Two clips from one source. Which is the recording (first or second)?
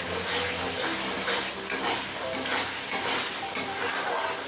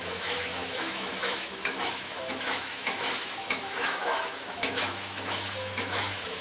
first